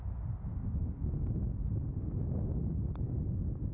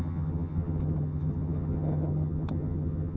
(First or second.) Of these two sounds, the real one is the first